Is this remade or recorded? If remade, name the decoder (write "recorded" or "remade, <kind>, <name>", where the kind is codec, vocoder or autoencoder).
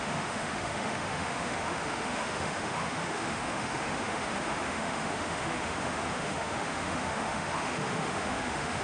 remade, autoencoder, DAC-VAE